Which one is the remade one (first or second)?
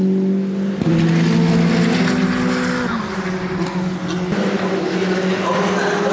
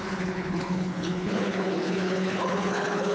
second